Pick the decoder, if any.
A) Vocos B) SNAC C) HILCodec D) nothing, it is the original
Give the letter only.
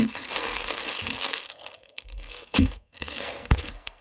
B